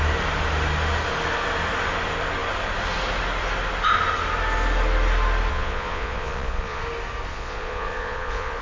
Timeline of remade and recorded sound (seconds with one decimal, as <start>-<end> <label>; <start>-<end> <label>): 0.0-5.5 recorded; 5.5-6.8 remade; 6.8-7.3 recorded; 7.3-8.6 remade